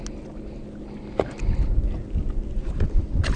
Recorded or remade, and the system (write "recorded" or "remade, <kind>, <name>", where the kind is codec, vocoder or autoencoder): recorded